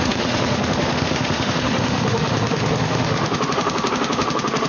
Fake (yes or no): yes